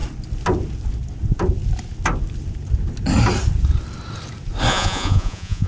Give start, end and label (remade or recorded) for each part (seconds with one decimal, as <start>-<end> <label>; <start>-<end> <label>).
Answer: 0.0-4.7 recorded; 4.7-5.7 remade